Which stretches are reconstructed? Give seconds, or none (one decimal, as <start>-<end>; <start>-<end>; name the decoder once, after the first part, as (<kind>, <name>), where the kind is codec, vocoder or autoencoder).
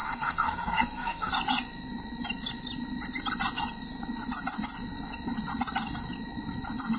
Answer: 0.0-1.3 (codec, SNAC)